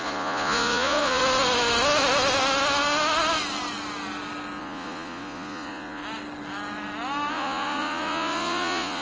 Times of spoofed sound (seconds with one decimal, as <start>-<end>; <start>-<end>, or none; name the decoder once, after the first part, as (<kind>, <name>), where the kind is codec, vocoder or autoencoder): 0.0-1.2 (vocoder, Vocos); 4.6-6.0; 7.3-9.0